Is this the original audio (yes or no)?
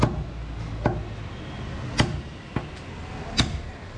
yes